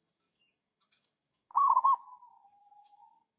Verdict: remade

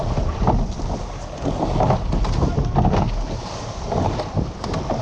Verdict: recorded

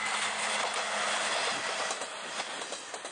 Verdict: recorded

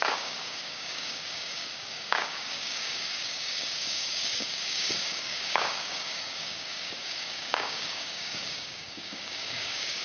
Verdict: remade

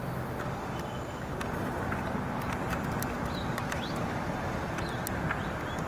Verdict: recorded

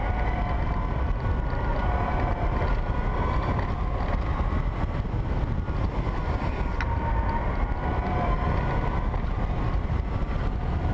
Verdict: recorded